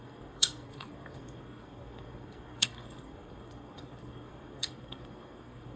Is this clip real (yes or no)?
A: no